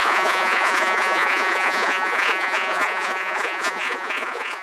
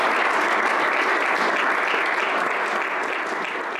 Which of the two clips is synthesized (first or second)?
first